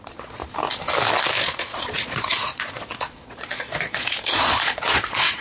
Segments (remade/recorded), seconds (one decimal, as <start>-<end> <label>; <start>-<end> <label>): 0.0-0.4 remade; 0.4-1.4 recorded; 1.4-5.4 remade